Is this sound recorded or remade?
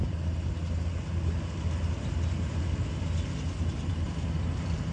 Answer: recorded